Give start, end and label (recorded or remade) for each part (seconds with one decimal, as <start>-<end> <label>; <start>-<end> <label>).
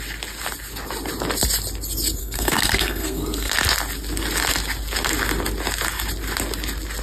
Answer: 0.0-2.2 recorded; 2.2-3.5 remade; 3.5-7.0 recorded